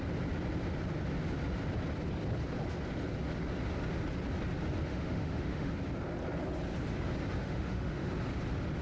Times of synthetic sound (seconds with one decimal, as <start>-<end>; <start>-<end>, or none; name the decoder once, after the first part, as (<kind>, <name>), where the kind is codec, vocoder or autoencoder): 4.9-5.7 (autoencoder, DAC-VAE); 7.4-8.1